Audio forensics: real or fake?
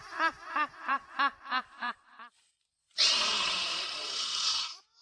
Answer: fake